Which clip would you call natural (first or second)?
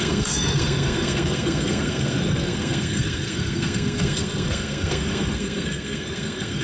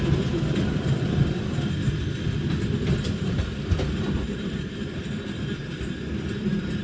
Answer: second